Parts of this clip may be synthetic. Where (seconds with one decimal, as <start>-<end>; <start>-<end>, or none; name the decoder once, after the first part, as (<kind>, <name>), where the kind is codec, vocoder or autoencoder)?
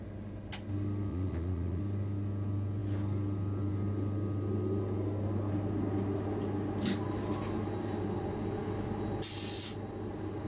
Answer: 1.1-1.8 (vocoder, Vocos)